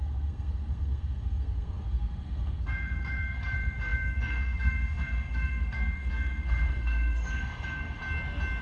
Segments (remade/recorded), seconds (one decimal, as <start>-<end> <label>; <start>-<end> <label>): 0.0-8.0 remade; 8.0-8.6 recorded